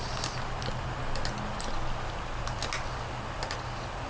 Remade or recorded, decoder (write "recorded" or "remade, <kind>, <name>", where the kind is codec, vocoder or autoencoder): recorded